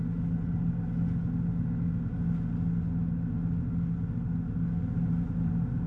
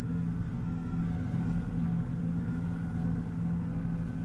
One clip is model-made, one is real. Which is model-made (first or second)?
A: second